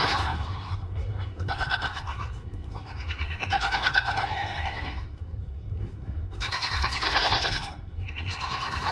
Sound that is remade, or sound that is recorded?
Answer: remade